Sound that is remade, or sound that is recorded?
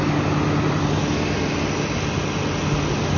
recorded